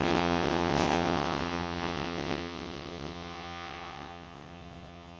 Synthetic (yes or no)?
yes